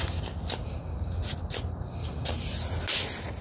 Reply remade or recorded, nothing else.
recorded